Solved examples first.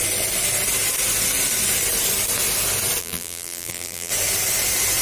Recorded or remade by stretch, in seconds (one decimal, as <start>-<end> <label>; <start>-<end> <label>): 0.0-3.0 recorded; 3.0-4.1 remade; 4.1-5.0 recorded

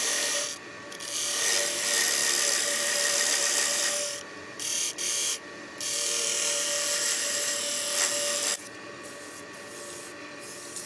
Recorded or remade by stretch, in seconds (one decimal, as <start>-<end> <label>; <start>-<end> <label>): 0.0-2.2 recorded; 2.2-6.4 remade; 6.4-10.9 recorded

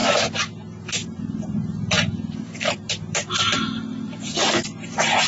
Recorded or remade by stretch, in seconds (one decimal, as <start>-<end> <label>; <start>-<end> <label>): 0.0-0.5 recorded; 0.5-5.3 remade